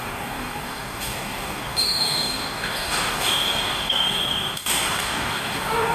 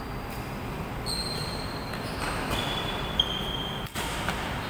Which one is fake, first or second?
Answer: first